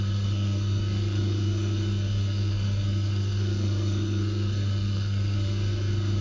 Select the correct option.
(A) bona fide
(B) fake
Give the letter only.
B